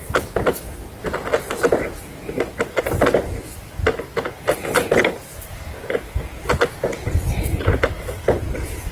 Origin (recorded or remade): recorded